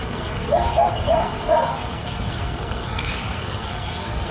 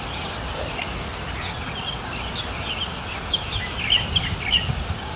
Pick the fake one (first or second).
first